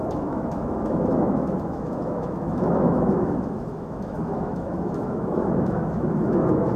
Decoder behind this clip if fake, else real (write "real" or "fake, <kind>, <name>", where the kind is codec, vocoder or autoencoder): fake, autoencoder, DAC-VAE